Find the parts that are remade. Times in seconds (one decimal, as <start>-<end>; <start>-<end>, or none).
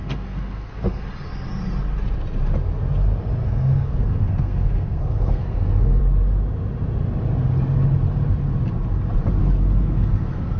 0.0-1.0; 3.4-6.0; 9.4-10.6